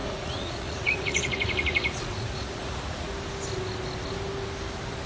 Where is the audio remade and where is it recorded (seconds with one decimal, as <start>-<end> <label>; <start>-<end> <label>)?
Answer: 0.0-3.1 remade; 3.1-5.1 recorded

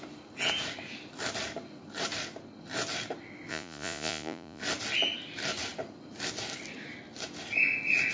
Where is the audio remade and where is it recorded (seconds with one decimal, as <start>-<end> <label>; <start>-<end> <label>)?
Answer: 0.0-3.5 recorded; 3.5-4.6 remade; 4.6-8.1 recorded